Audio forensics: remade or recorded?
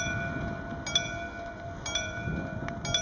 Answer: recorded